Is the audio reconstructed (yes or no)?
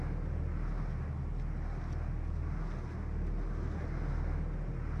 no